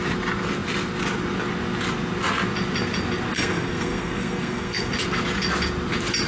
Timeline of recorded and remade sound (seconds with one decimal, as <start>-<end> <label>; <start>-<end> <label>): 0.0-3.3 recorded; 3.3-4.9 remade; 4.9-6.3 recorded